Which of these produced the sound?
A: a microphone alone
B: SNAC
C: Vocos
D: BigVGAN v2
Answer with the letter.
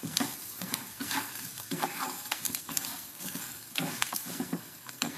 B